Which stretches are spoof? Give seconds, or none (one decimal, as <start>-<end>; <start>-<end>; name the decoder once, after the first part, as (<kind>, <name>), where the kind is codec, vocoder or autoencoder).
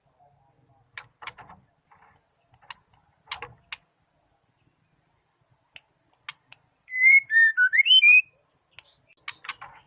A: 6.3-8.2 (vocoder, BigVGAN v2)